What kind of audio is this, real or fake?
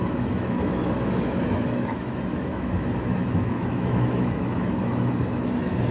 fake